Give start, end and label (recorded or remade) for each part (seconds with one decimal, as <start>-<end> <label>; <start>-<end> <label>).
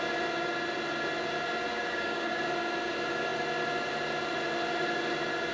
0.0-1.7 recorded; 1.7-2.4 remade; 2.4-5.5 recorded